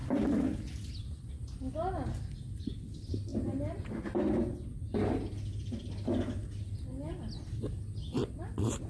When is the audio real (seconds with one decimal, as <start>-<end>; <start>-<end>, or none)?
0.0-8.9